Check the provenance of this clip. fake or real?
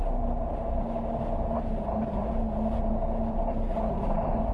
real